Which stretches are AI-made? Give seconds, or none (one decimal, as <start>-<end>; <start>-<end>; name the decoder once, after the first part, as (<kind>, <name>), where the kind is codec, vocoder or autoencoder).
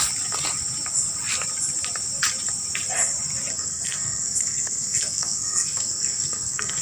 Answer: 3.5-6.8 (codec, SNAC)